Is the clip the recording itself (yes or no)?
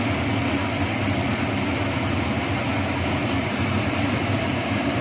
yes